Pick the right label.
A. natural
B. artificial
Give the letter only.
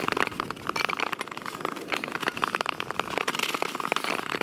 A